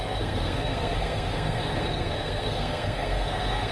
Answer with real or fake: fake